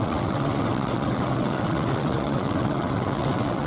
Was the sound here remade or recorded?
remade